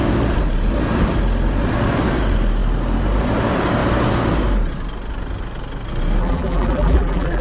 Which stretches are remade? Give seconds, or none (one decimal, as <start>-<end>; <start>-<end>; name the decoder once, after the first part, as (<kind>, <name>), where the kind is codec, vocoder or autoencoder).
6.2-7.4 (vocoder, BigVGAN v2)